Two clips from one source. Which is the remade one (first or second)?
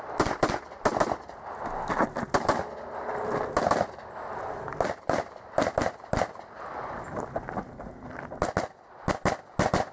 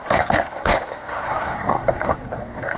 second